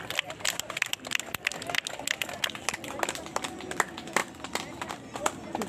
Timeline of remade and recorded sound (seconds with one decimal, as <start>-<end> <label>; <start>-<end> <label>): 0.0-4.2 recorded; 4.2-4.9 remade; 4.9-5.7 recorded